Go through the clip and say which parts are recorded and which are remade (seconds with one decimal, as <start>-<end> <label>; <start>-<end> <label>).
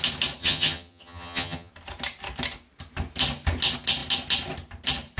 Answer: 0.0-0.4 recorded; 0.4-1.7 remade; 1.7-5.2 recorded